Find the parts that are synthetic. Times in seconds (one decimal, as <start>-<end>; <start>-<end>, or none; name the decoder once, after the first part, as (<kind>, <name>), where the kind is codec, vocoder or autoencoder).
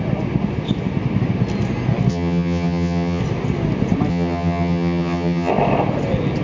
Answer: 2.1-3.2 (vocoder, HiFi-GAN); 4.1-5.5